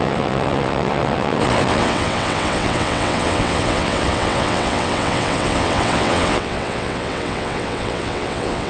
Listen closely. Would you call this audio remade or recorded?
remade